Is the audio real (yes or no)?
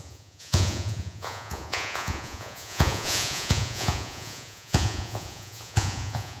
no